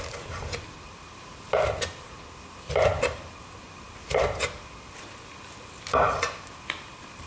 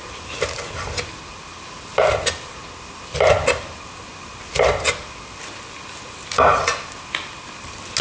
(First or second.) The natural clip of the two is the second